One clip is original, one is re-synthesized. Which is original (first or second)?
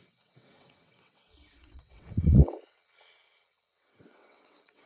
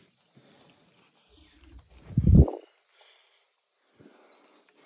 second